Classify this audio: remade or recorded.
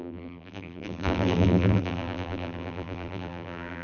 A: remade